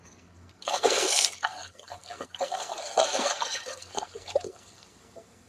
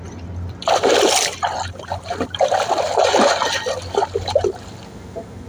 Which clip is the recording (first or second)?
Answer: second